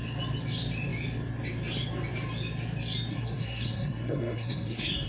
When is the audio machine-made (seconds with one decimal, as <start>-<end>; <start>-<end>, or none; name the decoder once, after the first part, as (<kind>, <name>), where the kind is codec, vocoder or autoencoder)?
3.1-5.1 (codec, SNAC)